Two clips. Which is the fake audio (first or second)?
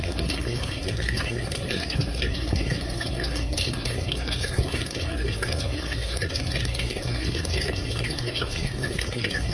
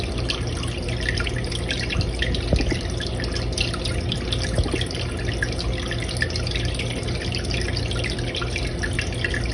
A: first